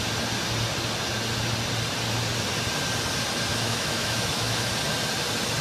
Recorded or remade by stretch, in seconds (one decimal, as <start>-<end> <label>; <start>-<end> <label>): 0.0-3.5 recorded; 3.5-4.7 remade; 4.7-5.6 recorded

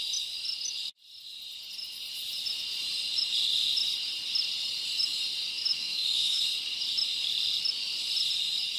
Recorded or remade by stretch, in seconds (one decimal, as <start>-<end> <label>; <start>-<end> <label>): 0.0-5.7 recorded; 5.7-6.4 remade; 6.4-8.8 recorded

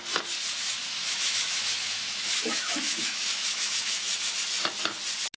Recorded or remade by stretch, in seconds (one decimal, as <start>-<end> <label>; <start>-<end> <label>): 0.0-0.8 recorded; 0.8-4.0 remade; 4.0-5.4 recorded

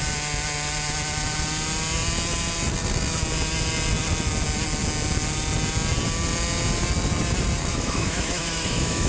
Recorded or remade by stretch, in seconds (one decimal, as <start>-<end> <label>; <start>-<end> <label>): 0.0-7.7 recorded; 7.7-9.1 remade

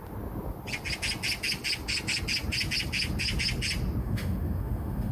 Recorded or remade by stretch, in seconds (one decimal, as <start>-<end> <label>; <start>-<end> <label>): 0.0-4.0 recorded; 4.0-5.1 remade

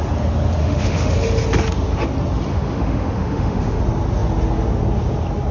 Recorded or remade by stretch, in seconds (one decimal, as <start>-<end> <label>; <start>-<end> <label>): 0.0-0.6 recorded; 0.6-1.1 remade; 1.1-2.5 recorded; 2.5-3.8 remade; 3.8-5.5 recorded